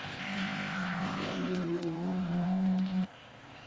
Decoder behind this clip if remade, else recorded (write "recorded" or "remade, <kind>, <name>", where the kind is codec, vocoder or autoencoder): remade, codec, ZipCodec